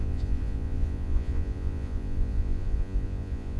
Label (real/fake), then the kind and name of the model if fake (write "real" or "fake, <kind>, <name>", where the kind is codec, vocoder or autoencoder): fake, vocoder, Vocos